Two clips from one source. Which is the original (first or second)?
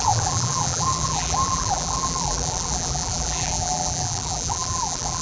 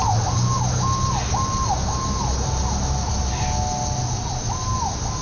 second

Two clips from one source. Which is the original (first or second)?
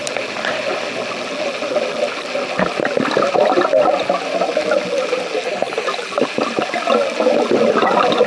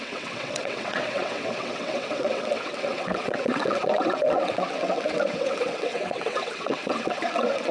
first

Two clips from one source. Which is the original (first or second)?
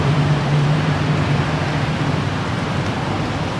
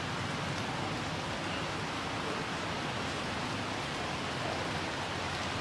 second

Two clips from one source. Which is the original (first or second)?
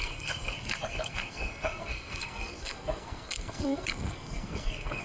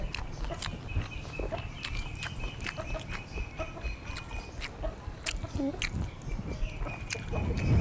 second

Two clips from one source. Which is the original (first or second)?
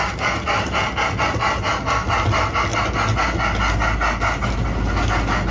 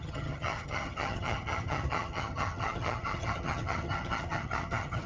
first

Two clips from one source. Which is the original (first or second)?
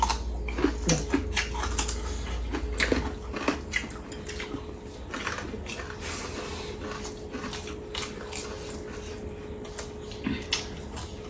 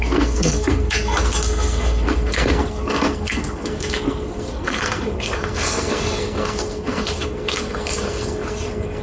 first